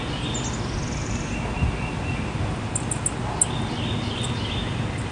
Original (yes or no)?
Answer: yes